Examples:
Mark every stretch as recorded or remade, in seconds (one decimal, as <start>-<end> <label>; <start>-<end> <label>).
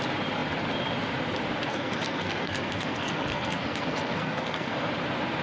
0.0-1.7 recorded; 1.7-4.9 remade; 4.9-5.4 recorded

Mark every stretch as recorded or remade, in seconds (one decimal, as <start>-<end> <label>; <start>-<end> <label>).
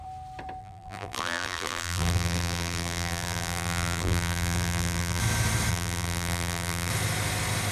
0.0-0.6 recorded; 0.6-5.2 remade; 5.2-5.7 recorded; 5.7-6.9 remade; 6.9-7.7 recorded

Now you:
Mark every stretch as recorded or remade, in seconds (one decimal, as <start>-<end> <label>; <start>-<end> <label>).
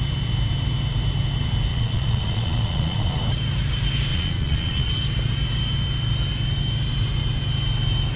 0.0-1.7 recorded; 1.7-3.2 remade; 3.2-4.1 recorded; 4.1-4.9 remade; 4.9-8.2 recorded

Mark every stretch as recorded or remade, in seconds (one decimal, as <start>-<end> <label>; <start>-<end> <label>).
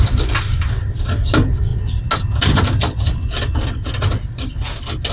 0.0-5.1 recorded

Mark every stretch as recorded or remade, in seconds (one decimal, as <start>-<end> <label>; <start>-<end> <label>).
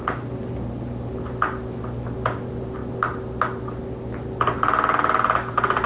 0.0-5.9 recorded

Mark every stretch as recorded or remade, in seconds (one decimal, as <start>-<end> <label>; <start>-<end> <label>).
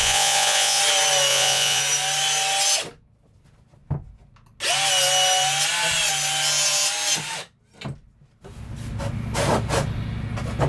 0.0-0.8 remade; 0.8-1.3 recorded; 1.3-1.8 remade; 1.8-10.7 recorded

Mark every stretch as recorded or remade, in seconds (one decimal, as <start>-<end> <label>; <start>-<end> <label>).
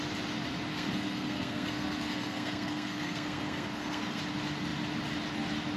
0.0-0.7 recorded; 0.7-4.2 remade; 4.2-5.8 recorded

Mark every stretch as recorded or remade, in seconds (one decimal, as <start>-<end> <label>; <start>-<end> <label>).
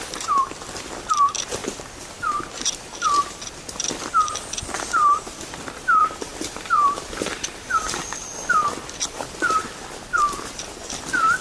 0.0-1.6 remade; 1.6-3.4 recorded; 3.4-11.4 remade